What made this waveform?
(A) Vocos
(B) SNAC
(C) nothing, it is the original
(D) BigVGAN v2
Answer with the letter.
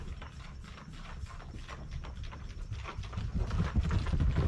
C